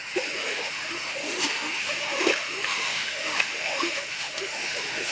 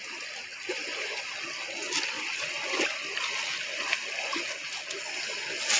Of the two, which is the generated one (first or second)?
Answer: first